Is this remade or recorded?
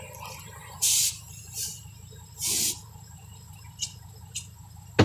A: recorded